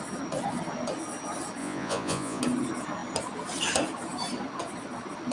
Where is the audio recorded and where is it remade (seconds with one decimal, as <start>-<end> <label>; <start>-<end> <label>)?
0.0-1.6 recorded; 1.6-2.4 remade; 2.4-5.3 recorded